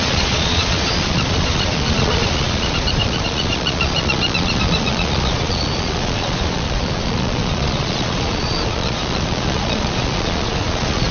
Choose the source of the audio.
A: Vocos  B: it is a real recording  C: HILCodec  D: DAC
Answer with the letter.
A